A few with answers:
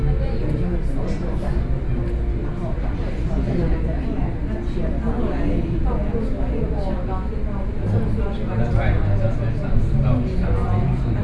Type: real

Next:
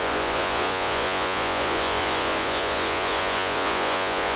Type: fake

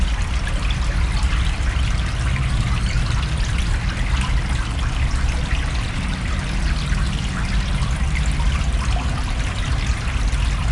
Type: real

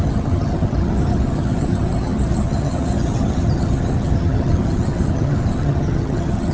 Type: fake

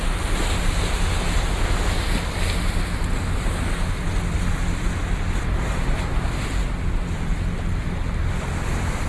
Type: real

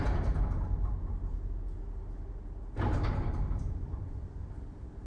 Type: real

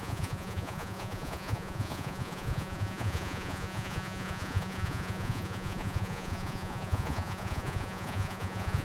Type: fake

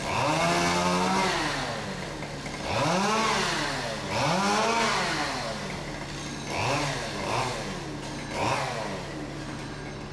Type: real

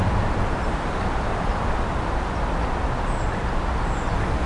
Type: real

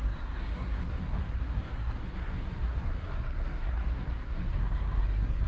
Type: fake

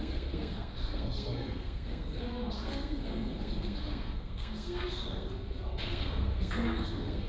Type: fake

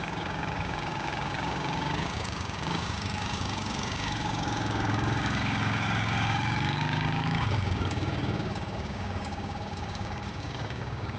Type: fake